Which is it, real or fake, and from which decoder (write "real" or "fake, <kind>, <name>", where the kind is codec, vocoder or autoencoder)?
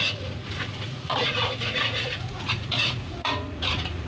fake, vocoder, Vocos